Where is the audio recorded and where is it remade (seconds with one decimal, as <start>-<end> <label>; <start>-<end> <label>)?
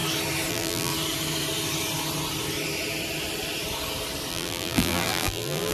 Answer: 0.0-0.5 recorded; 0.5-0.9 remade; 0.9-4.3 recorded; 4.3-5.7 remade